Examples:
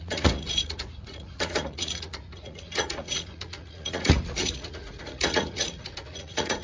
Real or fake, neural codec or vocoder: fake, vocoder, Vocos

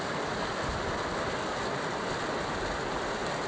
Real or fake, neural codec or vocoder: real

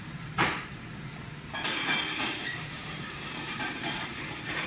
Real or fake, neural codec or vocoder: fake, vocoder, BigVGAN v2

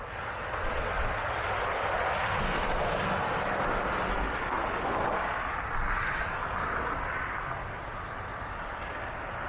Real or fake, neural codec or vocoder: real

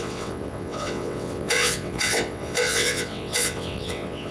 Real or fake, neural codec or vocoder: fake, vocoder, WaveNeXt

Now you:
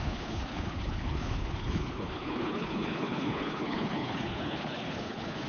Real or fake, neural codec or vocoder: fake, codec, HILCodec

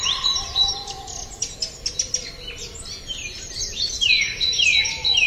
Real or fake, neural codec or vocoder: real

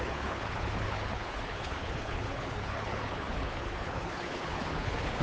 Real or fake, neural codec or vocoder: fake, codec, HILCodec